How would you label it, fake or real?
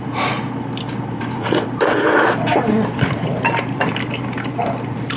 fake